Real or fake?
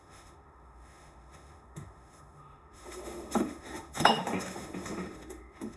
fake